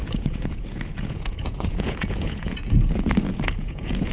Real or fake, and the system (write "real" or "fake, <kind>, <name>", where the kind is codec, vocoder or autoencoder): fake, vocoder, Vocos